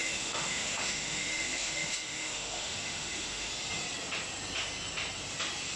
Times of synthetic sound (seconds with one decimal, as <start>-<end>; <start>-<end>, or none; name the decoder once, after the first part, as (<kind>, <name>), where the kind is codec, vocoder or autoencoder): 0.0-3.5 (autoencoder, DAC-VAE)